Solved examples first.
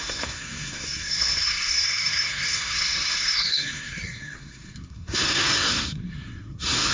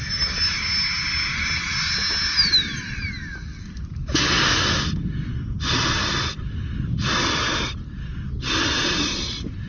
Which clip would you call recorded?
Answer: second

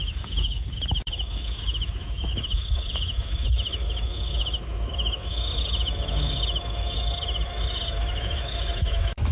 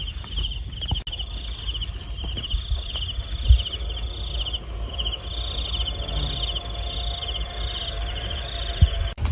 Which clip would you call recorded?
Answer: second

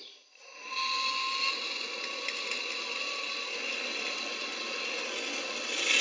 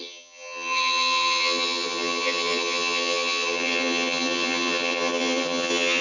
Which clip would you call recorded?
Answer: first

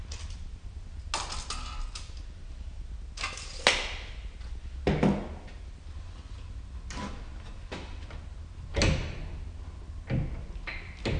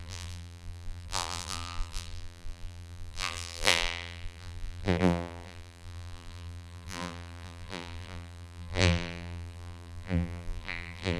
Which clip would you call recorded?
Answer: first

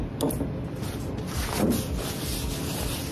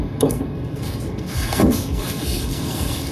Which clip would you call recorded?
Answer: first